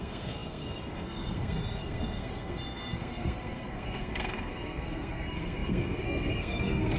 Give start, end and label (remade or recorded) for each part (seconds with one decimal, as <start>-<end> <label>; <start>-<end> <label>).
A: 0.0-7.0 remade